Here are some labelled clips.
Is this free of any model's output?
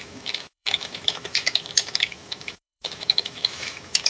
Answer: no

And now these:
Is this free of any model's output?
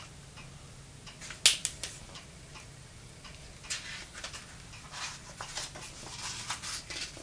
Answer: yes